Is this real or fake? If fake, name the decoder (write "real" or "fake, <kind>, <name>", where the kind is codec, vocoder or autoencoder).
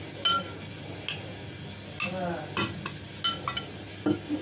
real